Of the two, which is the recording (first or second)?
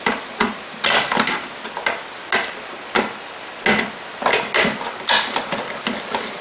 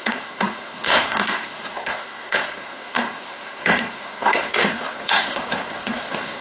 first